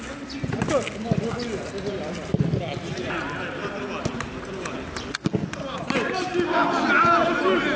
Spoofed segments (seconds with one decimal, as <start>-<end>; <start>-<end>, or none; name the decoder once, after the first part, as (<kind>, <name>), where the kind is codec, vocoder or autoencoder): none